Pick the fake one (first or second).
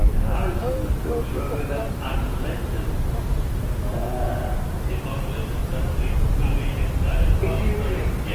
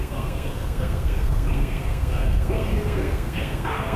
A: second